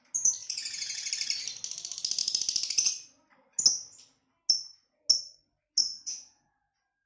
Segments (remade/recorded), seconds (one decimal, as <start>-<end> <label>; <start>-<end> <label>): 0.0-0.4 recorded; 0.4-1.1 remade; 1.1-5.8 recorded; 5.8-6.6 remade; 6.6-7.1 recorded